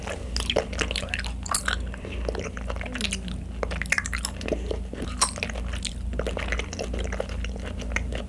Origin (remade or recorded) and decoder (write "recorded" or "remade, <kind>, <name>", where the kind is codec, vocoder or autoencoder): recorded